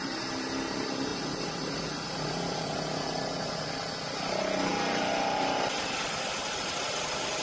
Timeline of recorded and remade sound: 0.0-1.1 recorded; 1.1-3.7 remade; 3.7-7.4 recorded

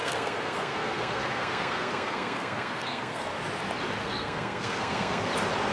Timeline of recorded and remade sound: 0.0-3.4 remade; 3.4-4.0 recorded; 4.0-5.3 remade; 5.3-5.7 recorded

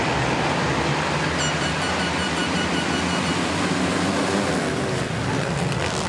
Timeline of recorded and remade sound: 0.0-6.1 recorded

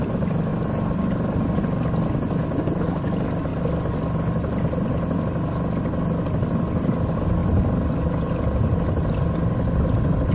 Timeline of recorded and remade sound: 0.0-10.3 recorded

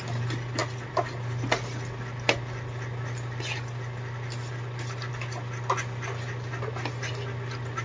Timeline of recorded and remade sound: 0.0-7.8 recorded